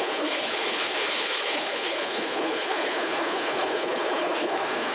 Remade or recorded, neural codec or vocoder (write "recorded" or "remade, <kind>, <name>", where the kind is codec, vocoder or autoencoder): remade, codec, HILCodec